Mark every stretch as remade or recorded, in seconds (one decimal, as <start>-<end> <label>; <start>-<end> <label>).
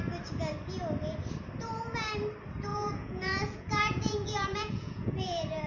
0.0-2.7 recorded; 2.7-5.7 remade